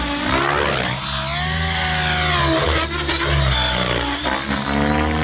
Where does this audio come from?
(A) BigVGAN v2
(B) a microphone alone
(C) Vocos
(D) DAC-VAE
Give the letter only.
B